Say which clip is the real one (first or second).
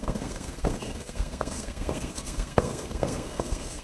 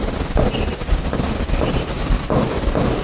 second